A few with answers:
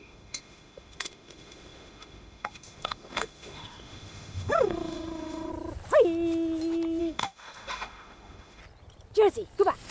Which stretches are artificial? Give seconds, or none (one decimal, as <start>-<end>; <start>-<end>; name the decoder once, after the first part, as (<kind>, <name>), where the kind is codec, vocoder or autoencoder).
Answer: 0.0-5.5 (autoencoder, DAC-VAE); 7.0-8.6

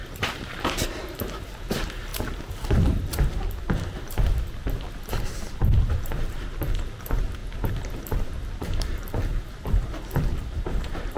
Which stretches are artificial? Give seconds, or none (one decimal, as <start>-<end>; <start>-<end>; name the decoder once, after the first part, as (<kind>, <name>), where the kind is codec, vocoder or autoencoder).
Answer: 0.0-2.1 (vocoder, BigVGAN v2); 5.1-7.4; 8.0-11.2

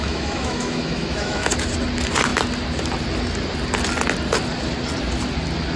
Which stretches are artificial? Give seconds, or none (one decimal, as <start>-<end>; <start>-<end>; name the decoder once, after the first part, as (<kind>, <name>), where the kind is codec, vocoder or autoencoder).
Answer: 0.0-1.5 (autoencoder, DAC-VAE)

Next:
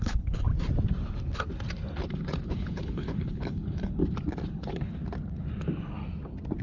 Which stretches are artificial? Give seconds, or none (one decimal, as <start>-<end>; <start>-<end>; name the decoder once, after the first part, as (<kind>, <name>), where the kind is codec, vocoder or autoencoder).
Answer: 0.0-0.5 (codec, HILCodec); 2.5-4.0; 4.5-5.0